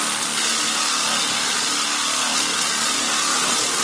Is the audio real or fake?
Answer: real